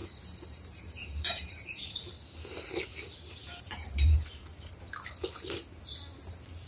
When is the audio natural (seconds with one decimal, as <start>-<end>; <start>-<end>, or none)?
2.1-3.4; 4.7-6.7